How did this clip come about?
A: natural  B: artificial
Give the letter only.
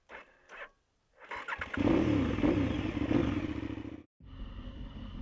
A